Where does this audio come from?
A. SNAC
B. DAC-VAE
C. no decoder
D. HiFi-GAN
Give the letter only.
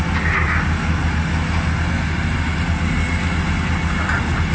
C